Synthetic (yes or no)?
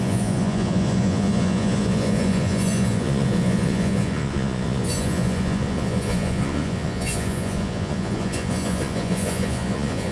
yes